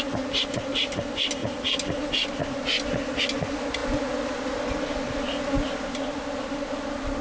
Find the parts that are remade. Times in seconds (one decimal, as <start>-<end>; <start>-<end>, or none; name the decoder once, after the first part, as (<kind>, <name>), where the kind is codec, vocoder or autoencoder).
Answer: none